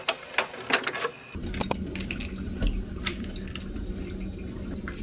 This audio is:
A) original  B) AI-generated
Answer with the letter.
A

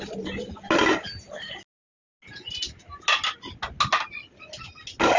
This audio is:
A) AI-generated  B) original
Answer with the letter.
B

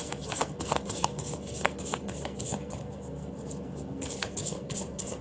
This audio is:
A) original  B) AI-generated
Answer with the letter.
B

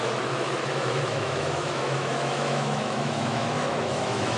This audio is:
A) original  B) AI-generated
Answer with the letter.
B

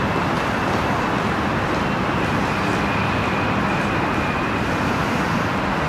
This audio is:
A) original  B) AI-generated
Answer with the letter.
A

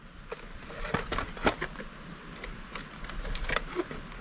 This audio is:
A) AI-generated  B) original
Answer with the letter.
B